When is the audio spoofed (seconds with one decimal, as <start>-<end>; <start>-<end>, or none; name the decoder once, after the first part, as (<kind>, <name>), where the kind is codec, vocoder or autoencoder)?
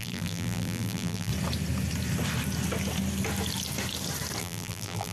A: 0.0-1.3 (vocoder, BigVGAN v2); 4.4-5.1